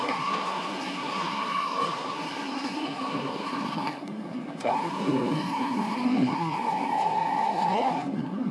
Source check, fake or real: fake